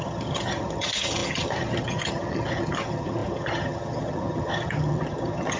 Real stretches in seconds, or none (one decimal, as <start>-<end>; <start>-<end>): none